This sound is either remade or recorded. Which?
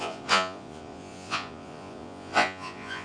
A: remade